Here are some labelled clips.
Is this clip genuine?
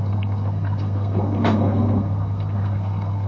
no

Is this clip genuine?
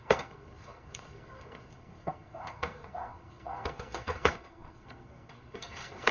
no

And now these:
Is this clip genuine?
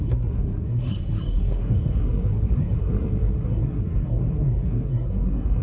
no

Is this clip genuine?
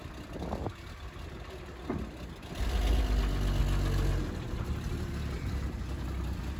yes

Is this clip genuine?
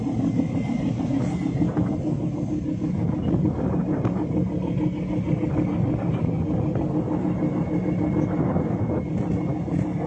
yes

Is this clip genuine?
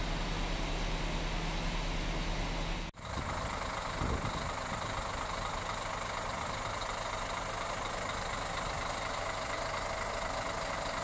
yes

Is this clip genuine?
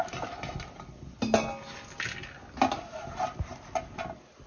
yes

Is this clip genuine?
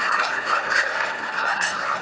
no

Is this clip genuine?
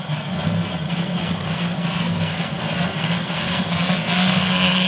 no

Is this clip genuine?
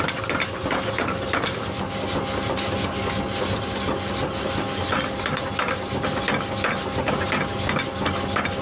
yes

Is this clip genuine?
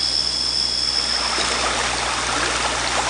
yes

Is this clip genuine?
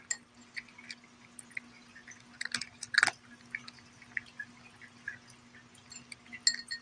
yes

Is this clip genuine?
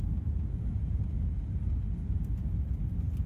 yes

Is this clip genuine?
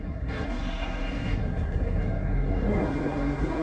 no